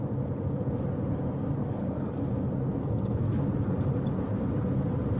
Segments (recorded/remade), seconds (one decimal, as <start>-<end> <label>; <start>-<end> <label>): 0.0-1.6 recorded; 1.6-2.1 remade; 2.1-2.8 recorded; 2.8-3.4 remade; 3.4-5.2 recorded